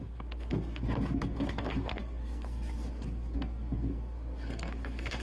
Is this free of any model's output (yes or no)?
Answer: no